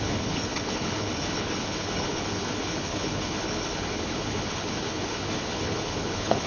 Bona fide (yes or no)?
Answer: no